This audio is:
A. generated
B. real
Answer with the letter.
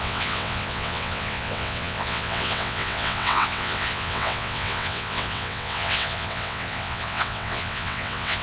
A